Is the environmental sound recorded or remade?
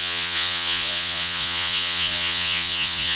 remade